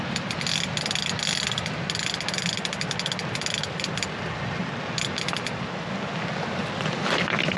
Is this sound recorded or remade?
recorded